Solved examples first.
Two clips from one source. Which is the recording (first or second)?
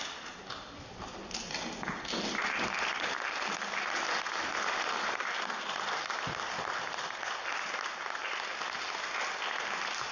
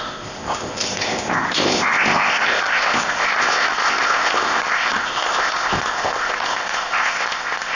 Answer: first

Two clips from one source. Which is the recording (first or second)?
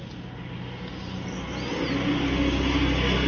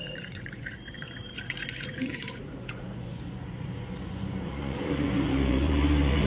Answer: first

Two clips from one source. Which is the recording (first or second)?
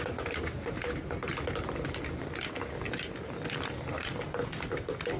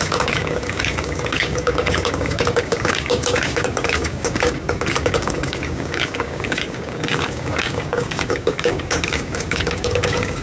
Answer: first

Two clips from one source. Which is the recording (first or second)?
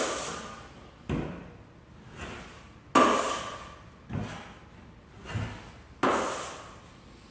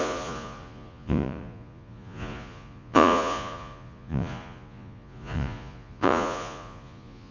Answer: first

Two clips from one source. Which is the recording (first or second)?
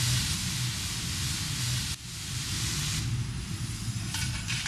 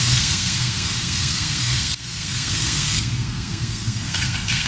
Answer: first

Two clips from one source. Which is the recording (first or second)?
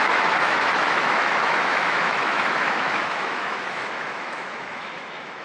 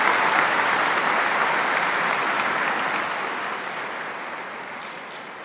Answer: second